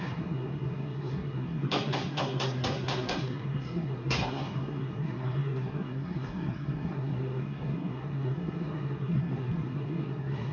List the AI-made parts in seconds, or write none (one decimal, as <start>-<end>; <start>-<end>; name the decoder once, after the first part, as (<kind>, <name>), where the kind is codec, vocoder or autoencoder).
0.0-10.5 (codec, SNAC)